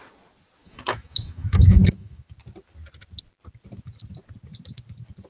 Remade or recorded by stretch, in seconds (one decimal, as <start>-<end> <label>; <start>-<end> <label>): 0.0-0.6 recorded; 0.6-2.4 remade; 2.4-5.3 recorded